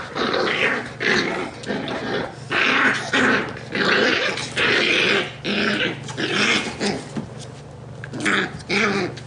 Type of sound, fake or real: real